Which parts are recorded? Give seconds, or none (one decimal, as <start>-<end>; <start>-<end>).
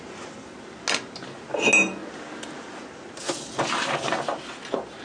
0.0-5.0